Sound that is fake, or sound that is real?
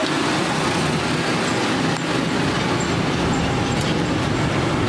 real